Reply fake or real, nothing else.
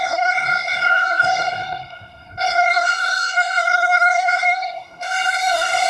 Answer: fake